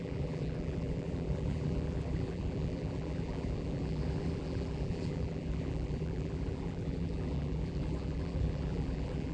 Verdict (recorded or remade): remade